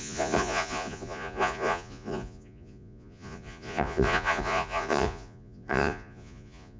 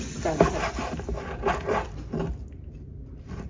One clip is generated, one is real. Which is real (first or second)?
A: second